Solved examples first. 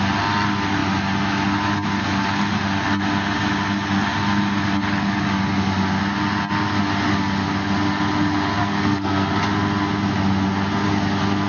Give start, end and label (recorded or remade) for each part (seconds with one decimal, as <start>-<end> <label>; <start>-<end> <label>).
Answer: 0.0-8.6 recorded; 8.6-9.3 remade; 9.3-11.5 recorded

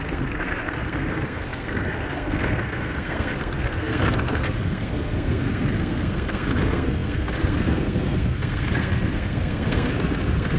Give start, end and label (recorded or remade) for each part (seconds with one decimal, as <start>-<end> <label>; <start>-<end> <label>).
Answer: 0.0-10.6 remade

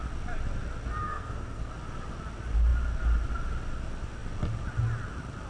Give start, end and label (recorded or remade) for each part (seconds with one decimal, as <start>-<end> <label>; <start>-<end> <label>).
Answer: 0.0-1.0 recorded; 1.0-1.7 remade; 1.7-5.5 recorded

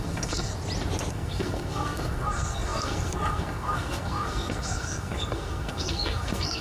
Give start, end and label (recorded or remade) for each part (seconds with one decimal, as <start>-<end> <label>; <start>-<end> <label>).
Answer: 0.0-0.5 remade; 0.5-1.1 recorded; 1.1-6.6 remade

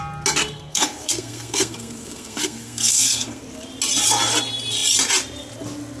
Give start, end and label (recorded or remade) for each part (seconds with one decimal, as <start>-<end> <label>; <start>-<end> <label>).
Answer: 0.0-0.4 recorded; 0.4-3.4 remade; 3.4-6.0 recorded